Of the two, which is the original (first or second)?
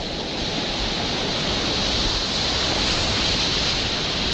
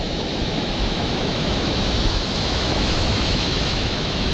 first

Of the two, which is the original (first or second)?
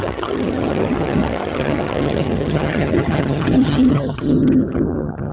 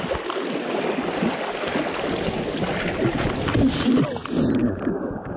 second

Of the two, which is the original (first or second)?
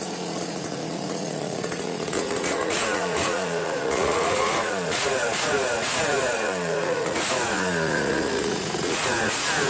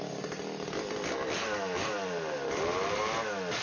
second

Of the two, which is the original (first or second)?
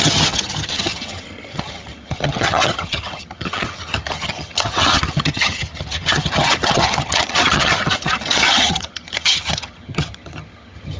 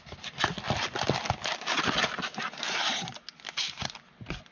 second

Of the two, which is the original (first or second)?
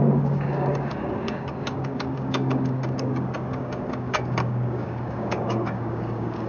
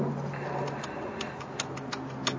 second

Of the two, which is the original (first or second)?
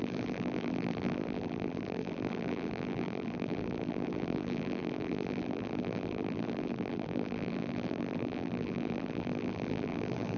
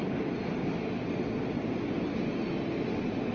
second